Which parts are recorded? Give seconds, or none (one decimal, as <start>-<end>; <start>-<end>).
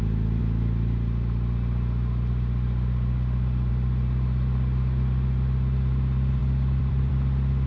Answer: 0.0-6.4; 7.1-7.7